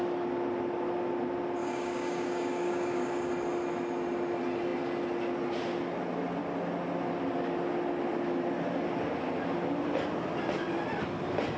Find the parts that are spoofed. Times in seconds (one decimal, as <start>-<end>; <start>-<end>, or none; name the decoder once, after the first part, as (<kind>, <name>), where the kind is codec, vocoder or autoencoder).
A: 1.6-3.3 (codec, DAC)